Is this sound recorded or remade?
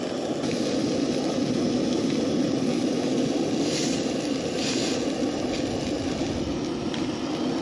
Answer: recorded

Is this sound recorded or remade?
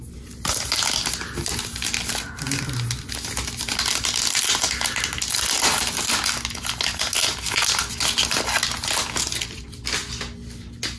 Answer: recorded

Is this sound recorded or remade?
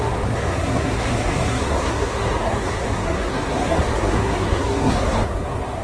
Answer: remade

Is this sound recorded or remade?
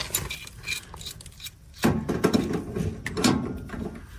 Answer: recorded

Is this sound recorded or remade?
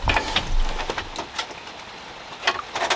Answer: recorded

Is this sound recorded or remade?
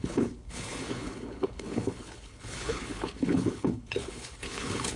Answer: remade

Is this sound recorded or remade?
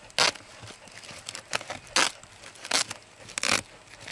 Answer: recorded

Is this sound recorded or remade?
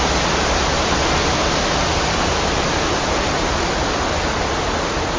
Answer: recorded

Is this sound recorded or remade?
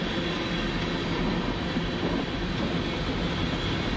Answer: recorded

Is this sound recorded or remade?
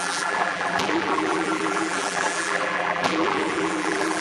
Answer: remade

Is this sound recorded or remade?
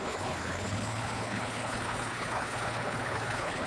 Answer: remade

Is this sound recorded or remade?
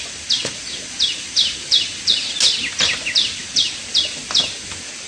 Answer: recorded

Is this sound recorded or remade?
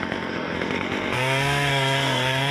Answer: remade